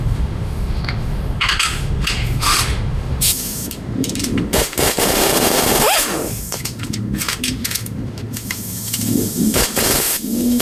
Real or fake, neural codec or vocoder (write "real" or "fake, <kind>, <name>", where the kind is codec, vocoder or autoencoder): fake, autoencoder, DAC-VAE